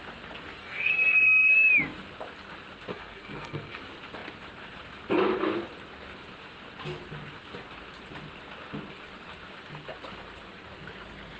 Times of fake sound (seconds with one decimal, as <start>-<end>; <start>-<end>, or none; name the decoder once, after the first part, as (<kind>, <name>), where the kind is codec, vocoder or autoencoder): 0.6-1.5 (codec, SNAC); 2.9-3.8